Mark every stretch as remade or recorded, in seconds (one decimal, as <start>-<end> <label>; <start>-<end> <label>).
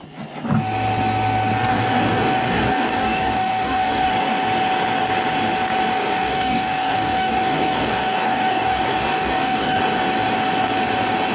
0.0-1.7 recorded; 1.7-4.1 remade; 4.1-5.9 recorded; 5.9-9.8 remade; 9.8-11.3 recorded